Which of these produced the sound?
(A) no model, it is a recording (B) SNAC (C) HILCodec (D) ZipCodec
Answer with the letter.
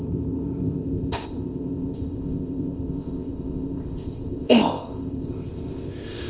D